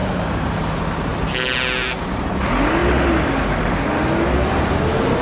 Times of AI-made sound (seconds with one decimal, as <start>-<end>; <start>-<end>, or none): 0.0-0.7